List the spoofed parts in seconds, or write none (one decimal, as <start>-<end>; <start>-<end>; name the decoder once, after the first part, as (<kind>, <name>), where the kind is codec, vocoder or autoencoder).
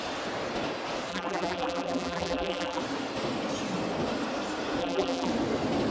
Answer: 1.1-2.8 (vocoder, BigVGAN v2); 4.8-5.3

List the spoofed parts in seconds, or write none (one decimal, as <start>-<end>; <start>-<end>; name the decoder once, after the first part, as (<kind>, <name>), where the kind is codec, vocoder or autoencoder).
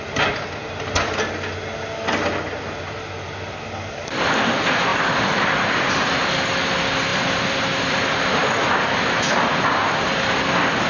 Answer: 4.9-6.2 (vocoder, BigVGAN v2); 7.1-8.5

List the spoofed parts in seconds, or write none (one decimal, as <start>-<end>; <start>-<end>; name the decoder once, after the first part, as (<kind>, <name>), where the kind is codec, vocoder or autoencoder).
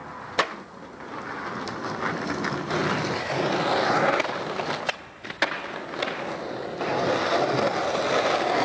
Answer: none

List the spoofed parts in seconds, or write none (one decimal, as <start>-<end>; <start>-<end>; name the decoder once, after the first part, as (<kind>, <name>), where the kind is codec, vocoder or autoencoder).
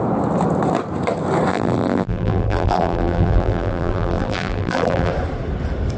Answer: 1.5-5.1 (vocoder, BigVGAN v2)